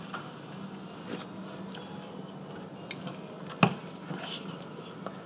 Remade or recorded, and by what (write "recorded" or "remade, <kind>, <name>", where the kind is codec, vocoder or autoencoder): recorded